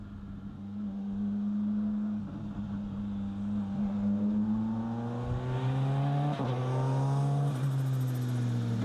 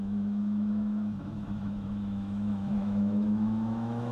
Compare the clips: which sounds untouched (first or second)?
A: first